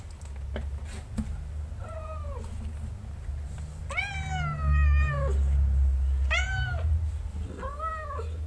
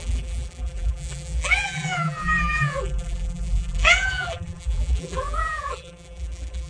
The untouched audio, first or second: first